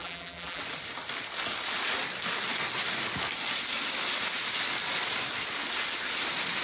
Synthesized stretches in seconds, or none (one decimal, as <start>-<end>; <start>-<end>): 0.0-0.6